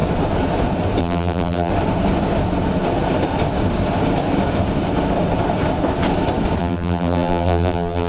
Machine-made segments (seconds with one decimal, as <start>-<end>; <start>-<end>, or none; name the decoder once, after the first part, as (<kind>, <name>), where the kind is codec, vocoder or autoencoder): 1.0-1.7 (vocoder, BigVGAN v2); 6.6-8.1